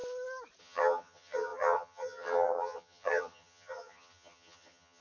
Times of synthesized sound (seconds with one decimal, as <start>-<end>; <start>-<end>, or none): 0.6-5.0